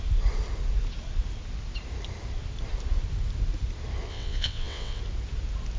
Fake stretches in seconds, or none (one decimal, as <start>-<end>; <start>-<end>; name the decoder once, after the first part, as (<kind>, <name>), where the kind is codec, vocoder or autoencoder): 4.1-5.0 (vocoder, WaveNeXt)

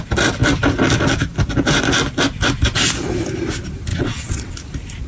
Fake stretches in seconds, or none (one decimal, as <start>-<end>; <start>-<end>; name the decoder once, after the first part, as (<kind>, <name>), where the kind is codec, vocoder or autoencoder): 3.9-4.5 (vocoder, WaveNeXt)

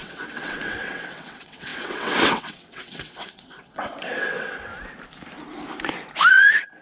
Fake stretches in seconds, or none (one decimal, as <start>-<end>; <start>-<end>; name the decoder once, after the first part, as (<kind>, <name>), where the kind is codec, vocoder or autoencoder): 0.0-4.7 (vocoder, WaveNeXt); 6.3-6.8

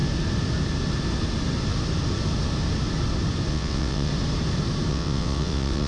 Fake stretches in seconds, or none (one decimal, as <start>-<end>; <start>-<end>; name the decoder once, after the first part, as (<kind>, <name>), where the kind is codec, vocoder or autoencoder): 3.5-4.1 (vocoder, WaveNeXt); 4.9-5.9

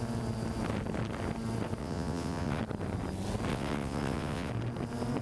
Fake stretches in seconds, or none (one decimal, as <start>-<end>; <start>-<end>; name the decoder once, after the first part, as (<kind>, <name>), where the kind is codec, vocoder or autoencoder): 1.8-2.6 (vocoder, WaveNeXt); 3.5-4.5